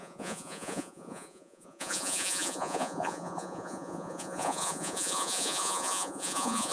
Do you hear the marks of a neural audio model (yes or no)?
yes